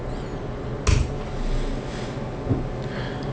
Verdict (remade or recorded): recorded